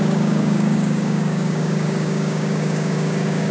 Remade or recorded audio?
remade